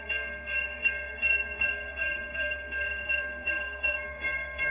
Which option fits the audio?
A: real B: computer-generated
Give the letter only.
B